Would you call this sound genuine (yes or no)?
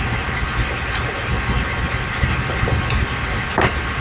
yes